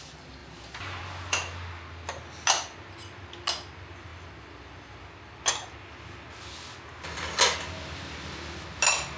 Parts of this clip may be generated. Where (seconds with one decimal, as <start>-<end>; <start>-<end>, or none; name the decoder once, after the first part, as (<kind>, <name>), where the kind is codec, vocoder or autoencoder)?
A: none